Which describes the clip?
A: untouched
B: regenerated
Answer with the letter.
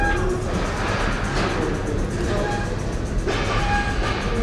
A